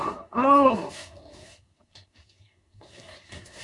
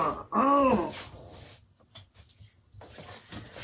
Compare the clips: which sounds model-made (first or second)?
first